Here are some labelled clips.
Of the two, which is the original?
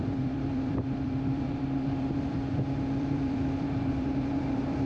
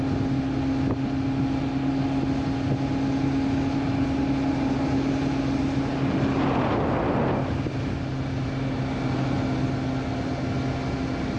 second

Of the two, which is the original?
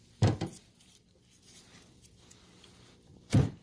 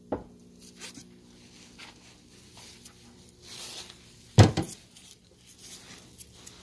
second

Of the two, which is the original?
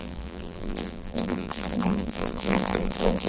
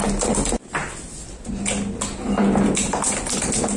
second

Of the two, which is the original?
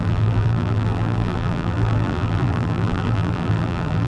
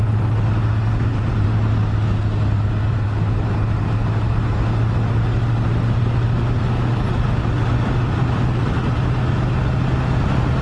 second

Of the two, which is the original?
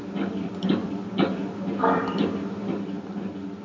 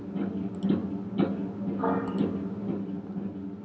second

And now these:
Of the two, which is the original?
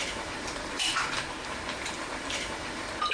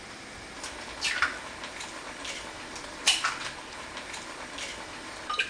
second